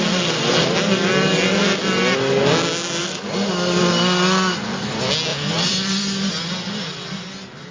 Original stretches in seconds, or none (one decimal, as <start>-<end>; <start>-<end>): 0.0-3.0; 3.8-5.3; 6.3-7.7